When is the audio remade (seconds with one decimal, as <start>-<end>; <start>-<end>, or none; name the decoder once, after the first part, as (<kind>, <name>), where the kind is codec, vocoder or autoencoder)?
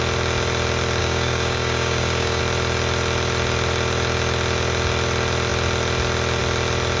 1.0-2.4 (codec, DAC)